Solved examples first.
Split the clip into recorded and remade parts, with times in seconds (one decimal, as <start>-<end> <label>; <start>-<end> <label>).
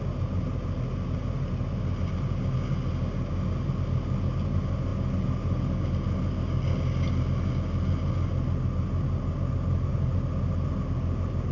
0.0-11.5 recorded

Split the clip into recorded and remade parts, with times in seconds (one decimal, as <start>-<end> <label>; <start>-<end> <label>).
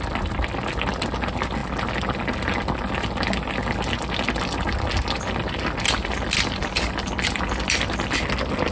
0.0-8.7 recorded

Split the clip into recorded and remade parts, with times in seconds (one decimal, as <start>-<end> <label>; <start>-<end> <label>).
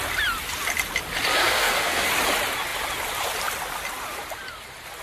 0.0-1.4 recorded; 1.4-2.1 remade; 2.1-5.0 recorded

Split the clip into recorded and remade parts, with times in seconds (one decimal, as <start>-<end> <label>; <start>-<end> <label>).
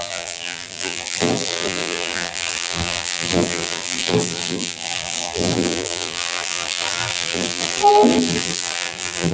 0.0-9.3 remade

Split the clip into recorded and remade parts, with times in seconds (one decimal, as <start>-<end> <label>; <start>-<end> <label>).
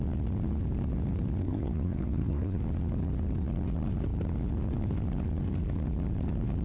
0.0-1.4 recorded; 1.4-2.6 remade; 2.6-6.6 recorded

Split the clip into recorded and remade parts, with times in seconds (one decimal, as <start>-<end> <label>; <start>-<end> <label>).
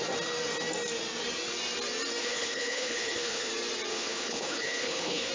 0.0-2.2 recorded; 2.2-3.5 remade; 3.5-3.9 recorded; 3.9-5.3 remade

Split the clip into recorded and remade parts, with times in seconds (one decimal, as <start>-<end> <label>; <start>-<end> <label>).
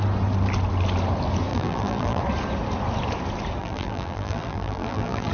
0.0-1.5 recorded; 1.5-2.2 remade; 2.2-3.6 recorded; 3.6-5.3 remade